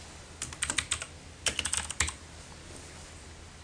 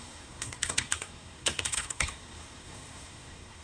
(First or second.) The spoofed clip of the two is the second